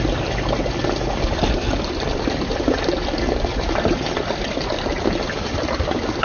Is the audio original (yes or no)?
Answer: yes